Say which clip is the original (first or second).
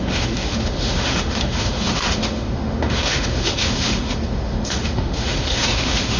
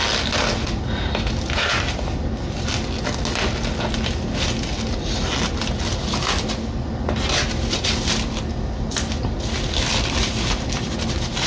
second